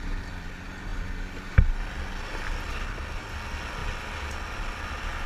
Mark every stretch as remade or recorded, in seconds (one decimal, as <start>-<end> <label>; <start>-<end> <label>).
0.0-5.3 recorded